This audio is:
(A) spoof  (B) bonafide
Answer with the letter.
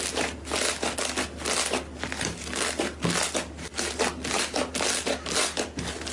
B